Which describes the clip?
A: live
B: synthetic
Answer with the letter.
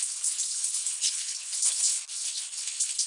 B